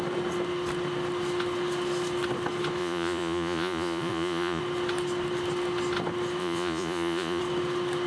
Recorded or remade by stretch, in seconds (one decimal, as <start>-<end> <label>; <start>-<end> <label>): 0.0-2.8 recorded; 2.8-4.6 remade; 4.6-6.4 recorded; 6.4-7.4 remade; 7.4-8.1 recorded